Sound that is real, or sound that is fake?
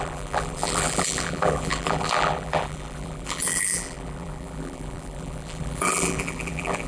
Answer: fake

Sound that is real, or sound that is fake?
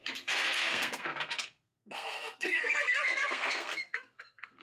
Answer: fake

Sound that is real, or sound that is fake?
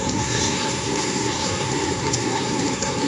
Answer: fake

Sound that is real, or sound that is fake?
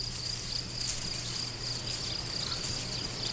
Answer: real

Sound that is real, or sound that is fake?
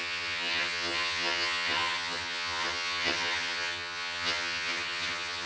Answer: fake